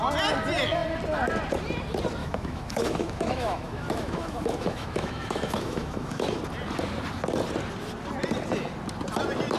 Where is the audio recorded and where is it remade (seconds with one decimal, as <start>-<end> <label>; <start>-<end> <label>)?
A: 0.0-2.2 recorded; 2.2-6.4 remade; 6.4-9.6 recorded